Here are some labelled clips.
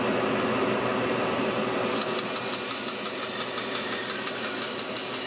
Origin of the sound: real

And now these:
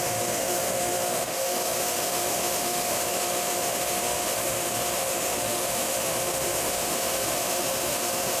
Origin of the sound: fake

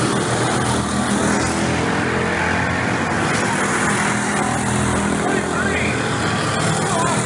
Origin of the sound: real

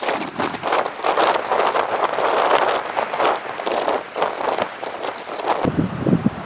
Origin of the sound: real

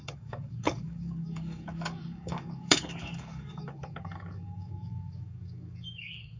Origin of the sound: fake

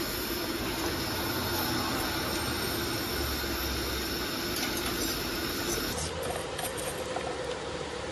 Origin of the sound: real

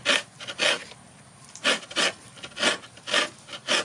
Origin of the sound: real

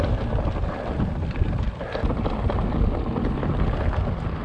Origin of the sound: real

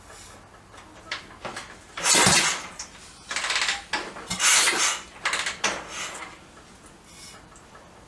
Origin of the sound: real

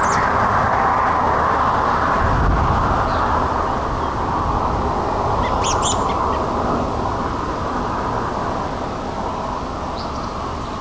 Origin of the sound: real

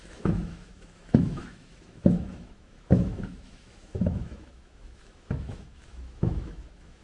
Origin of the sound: fake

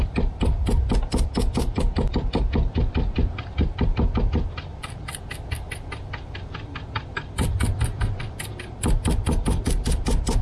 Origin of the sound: fake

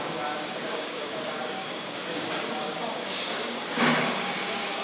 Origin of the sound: fake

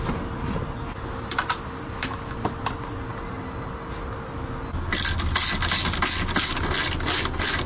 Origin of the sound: real